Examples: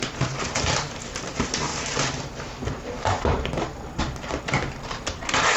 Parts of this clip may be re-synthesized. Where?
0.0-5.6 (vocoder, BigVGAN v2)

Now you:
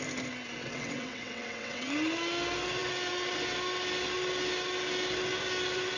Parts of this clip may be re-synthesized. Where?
0.6-1.9 (vocoder, WaveNeXt)